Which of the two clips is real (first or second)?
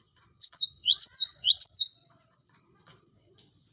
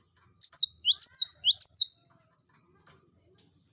second